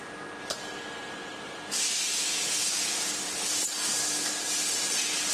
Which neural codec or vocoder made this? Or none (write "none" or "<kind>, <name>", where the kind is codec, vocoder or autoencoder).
none